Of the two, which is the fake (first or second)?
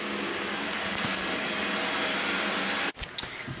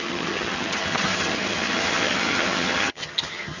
second